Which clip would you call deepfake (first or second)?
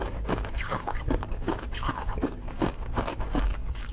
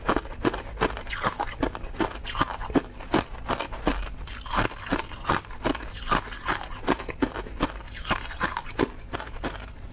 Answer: first